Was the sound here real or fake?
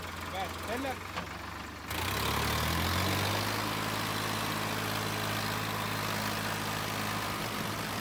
real